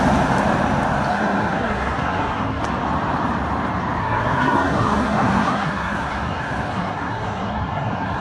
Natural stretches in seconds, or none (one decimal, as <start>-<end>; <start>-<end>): 0.0-1.1; 2.6-4.0